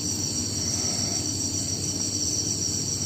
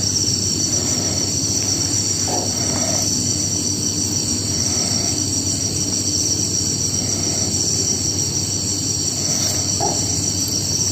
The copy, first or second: second